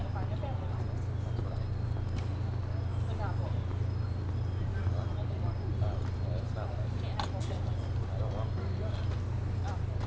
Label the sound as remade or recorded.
recorded